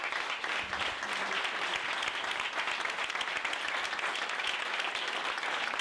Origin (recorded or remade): recorded